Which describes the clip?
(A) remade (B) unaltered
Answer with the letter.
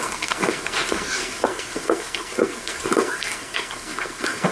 A